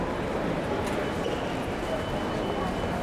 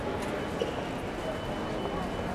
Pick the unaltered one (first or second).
second